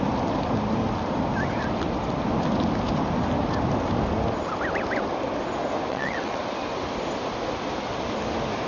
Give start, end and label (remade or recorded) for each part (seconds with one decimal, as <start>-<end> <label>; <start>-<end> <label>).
0.0-5.9 recorded; 5.9-6.4 remade; 6.4-8.7 recorded